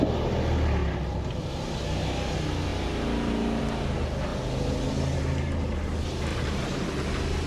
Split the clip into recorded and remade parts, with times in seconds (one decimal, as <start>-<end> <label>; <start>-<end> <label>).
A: 0.0-6.3 recorded; 6.3-6.8 remade; 6.8-7.5 recorded